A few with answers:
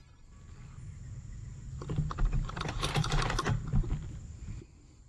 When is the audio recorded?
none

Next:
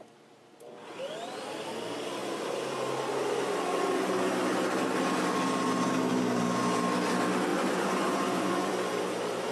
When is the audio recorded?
0.0-7.5; 8.7-9.5

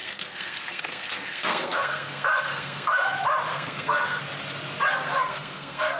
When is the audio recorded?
3.1-3.5; 4.2-4.9

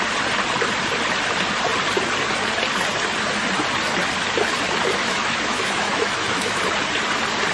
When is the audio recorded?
0.0-5.0; 6.6-7.5